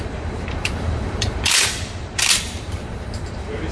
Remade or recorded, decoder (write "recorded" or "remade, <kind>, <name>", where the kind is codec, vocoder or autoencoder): remade, vocoder, BigVGAN v2